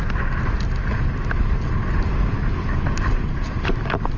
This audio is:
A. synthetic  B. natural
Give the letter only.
B